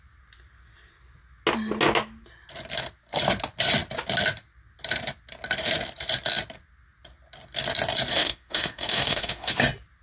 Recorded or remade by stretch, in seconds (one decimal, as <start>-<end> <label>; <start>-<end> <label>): 0.0-8.1 recorded; 8.1-9.6 remade; 9.6-10.0 recorded